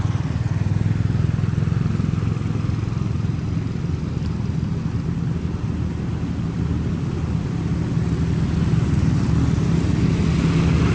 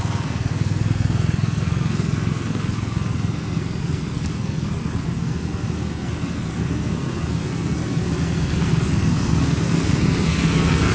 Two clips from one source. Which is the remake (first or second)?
second